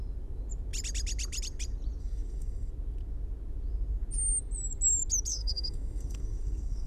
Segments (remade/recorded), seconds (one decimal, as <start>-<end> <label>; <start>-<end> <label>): 0.0-2.0 recorded; 2.0-2.7 remade; 2.7-5.3 recorded; 5.3-6.9 remade